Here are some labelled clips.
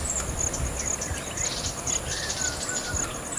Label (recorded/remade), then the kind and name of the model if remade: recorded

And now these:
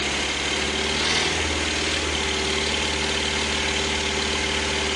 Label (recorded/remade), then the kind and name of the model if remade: recorded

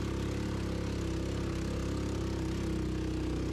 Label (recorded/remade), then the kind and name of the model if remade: recorded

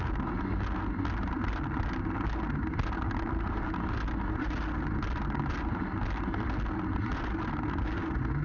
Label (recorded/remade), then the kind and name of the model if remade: recorded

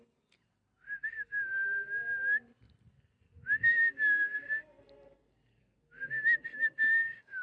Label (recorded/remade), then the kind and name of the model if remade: recorded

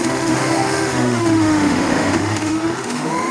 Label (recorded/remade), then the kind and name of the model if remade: remade, autoencoder, DAC-VAE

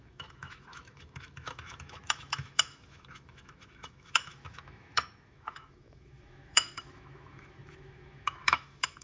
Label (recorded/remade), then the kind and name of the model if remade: remade, autoencoder, DAC-VAE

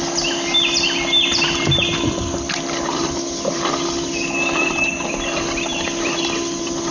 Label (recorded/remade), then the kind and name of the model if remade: recorded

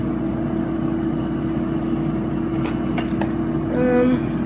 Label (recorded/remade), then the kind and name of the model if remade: recorded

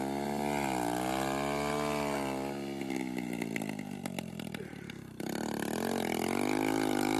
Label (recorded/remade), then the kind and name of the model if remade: recorded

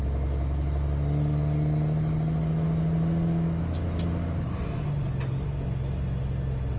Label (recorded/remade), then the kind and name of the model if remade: recorded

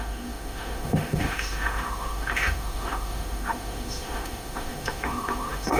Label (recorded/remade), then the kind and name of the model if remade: remade, autoencoder, DAC-VAE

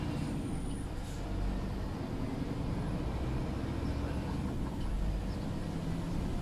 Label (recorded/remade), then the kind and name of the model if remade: recorded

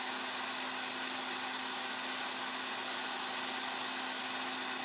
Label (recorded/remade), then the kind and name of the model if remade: recorded